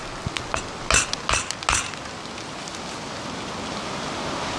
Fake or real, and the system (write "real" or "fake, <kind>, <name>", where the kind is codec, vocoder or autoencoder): real